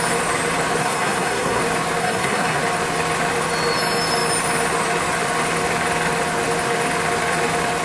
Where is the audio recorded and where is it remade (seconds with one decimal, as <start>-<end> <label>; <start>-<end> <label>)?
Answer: 0.0-0.8 recorded; 0.8-1.6 remade; 1.6-2.0 recorded; 2.0-2.6 remade; 2.6-7.8 recorded